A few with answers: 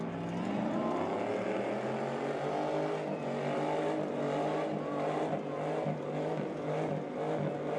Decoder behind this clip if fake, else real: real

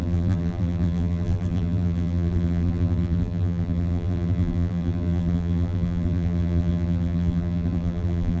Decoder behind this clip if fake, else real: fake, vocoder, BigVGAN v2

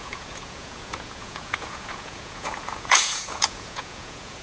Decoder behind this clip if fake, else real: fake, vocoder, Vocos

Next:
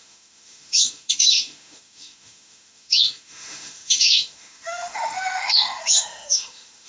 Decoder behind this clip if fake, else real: fake, autoencoder, DAC-VAE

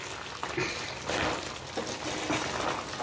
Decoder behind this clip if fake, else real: real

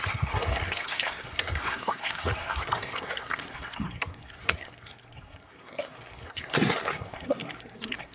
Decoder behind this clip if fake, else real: fake, codec, SNAC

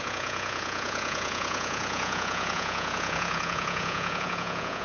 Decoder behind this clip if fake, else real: fake, vocoder, Vocos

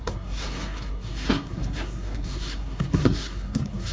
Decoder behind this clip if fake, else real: fake, codec, SNAC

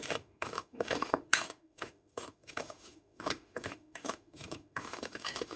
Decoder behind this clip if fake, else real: fake, autoencoder, DAC-VAE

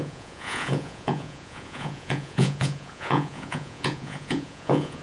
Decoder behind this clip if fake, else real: fake, vocoder, Vocos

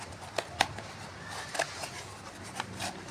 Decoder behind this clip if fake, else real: real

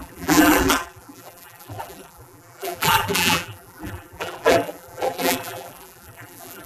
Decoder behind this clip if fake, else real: fake, vocoder, BigVGAN v2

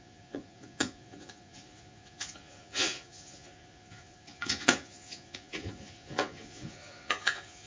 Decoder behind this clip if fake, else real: fake, vocoder, Vocos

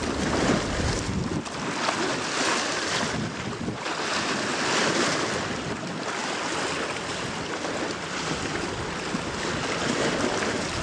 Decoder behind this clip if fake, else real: real